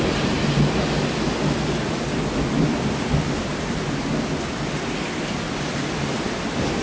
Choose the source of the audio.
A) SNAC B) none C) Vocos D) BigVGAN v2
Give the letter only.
B